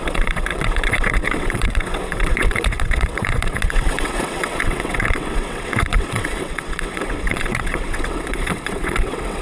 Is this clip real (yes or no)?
no